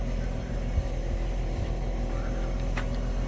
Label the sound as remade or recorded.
remade